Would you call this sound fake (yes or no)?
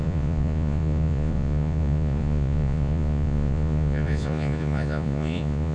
yes